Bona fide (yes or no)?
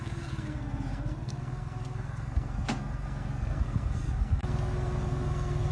no